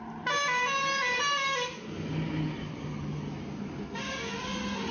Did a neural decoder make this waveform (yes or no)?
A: no